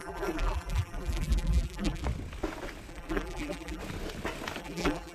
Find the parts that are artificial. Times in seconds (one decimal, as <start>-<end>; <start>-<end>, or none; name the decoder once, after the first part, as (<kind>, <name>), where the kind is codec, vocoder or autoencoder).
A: 0.0-2.0 (vocoder, BigVGAN v2); 2.9-3.8; 4.6-5.1